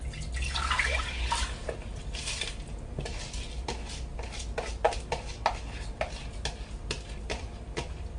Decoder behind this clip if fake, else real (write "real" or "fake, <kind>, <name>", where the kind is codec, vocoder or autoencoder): real